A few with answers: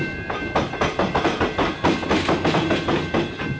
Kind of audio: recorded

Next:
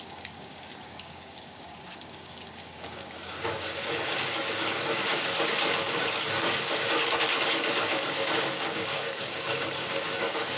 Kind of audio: remade